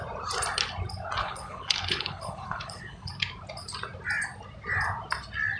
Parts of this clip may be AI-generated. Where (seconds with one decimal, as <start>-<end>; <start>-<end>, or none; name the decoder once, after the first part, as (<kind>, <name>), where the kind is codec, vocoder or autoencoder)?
1.2-3.1 (codec, HILCodec)